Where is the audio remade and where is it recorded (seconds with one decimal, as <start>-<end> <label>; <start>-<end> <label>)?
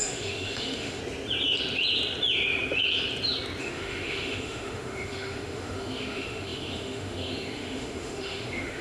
0.0-1.0 remade; 1.0-3.6 recorded; 3.6-8.8 remade